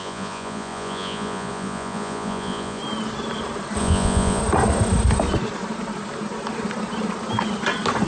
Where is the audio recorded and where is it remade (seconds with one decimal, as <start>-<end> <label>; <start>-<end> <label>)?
0.0-2.8 remade; 2.8-3.8 recorded; 3.8-4.4 remade; 4.4-8.1 recorded